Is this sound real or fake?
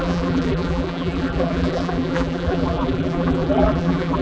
fake